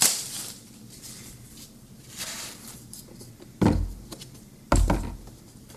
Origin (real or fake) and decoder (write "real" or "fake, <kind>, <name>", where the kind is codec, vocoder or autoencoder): real